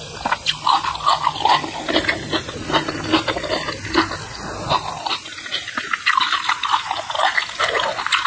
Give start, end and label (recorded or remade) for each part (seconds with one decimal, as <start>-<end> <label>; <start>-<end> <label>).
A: 0.0-8.3 recorded